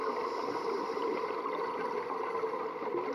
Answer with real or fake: real